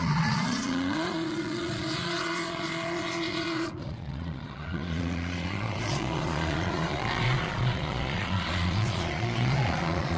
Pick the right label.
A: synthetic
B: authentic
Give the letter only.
A